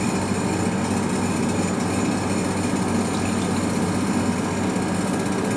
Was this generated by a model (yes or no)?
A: no